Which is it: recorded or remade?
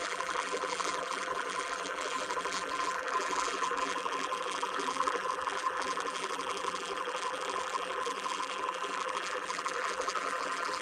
remade